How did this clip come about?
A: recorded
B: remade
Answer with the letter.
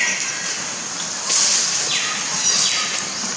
A